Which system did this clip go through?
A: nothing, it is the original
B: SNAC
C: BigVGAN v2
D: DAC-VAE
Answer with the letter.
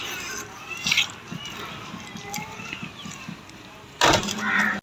A